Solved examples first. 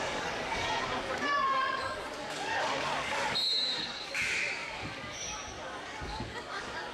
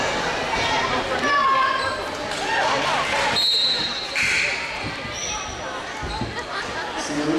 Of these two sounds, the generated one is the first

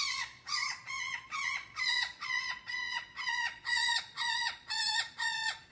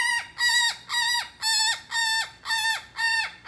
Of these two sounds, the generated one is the first